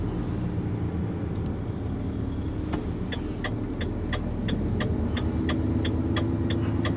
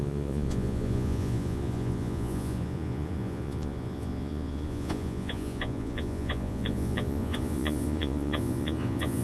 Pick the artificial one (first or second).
second